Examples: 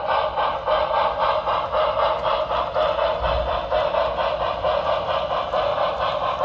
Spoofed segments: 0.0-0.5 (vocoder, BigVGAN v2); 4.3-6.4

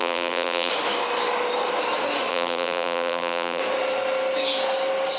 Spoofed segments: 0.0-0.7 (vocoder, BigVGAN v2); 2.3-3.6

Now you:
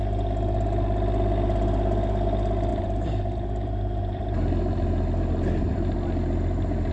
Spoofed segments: 2.7-6.9 (vocoder, BigVGAN v2)

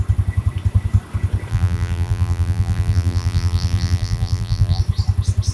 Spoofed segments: 1.5-4.8 (vocoder, BigVGAN v2)

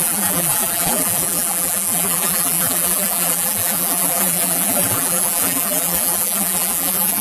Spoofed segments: 0.0-7.2 (vocoder, BigVGAN v2)